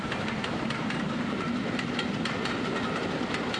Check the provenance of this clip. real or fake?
real